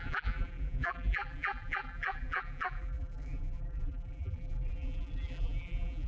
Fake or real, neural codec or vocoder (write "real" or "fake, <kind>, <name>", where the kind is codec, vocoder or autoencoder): fake, vocoder, BigVGAN v2